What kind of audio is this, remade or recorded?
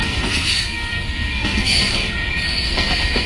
remade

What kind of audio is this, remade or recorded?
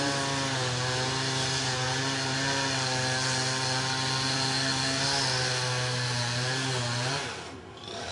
recorded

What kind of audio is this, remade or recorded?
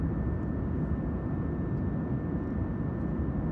recorded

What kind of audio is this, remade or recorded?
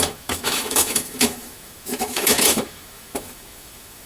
remade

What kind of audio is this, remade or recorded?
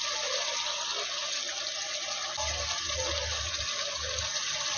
recorded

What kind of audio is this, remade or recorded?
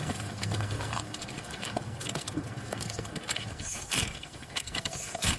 remade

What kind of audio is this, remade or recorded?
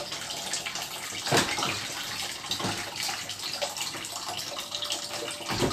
recorded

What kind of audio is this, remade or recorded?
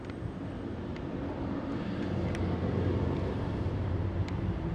remade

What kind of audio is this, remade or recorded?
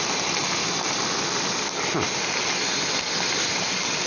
recorded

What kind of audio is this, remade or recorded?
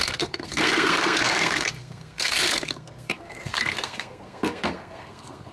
remade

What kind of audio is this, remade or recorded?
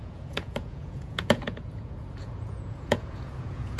remade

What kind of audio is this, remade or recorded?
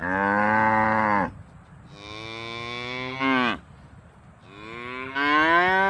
recorded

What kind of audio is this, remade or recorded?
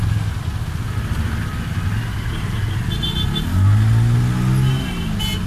recorded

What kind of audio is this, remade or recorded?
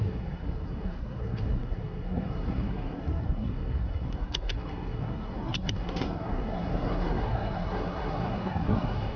remade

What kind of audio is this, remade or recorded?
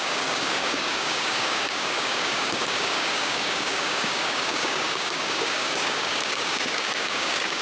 remade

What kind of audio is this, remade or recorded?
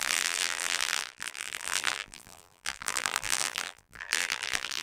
remade